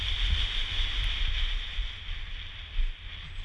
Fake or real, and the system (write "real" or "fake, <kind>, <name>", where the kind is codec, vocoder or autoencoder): real